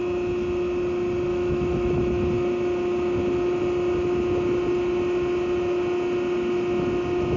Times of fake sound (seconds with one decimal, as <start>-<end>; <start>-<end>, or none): 1.3-2.0

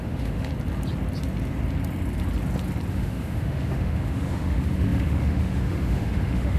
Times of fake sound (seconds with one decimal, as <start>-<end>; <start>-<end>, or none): 0.0-0.5; 2.9-6.6

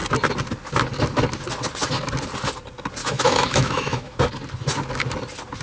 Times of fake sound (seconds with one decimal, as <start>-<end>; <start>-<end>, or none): 3.0-4.3